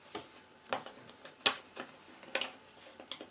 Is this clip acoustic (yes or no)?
yes